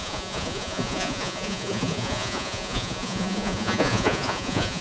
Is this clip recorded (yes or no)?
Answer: no